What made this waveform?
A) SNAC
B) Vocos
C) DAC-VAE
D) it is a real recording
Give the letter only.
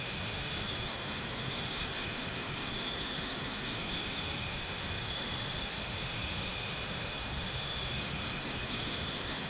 C